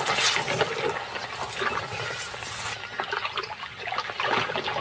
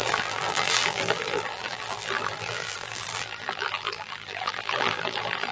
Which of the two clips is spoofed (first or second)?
second